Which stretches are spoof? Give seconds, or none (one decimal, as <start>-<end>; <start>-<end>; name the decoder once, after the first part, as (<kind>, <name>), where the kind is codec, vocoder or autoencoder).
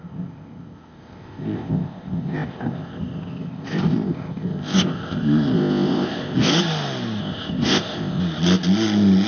0.0-6.5 (codec, ZipCodec); 7.2-8.2